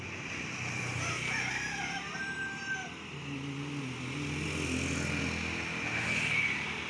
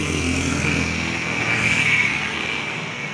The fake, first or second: second